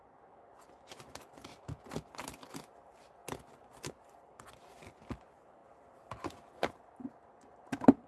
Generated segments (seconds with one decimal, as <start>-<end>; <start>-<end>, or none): none